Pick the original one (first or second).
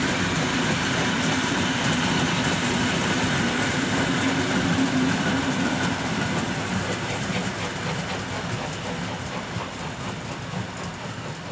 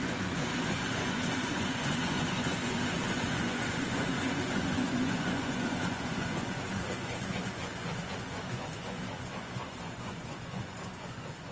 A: first